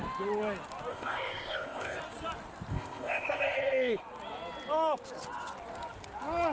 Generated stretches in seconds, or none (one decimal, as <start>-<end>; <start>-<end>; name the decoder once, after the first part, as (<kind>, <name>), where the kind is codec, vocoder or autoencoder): 0.9-2.0 (codec, ZipCodec); 2.7-4.0